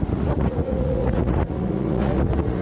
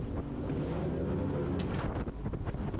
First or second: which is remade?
first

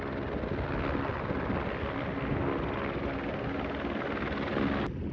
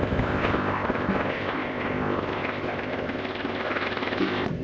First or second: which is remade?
second